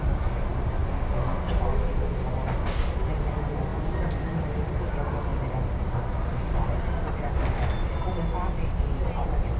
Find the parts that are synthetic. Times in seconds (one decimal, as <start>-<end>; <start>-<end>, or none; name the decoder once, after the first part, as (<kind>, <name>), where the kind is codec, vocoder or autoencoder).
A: 5.3-6.8 (vocoder, BigVGAN v2)